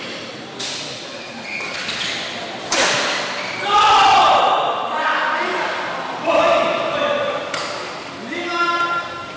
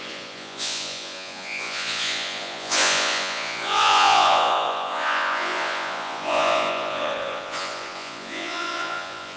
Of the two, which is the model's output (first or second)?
second